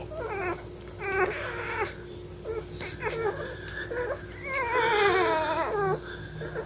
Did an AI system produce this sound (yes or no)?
no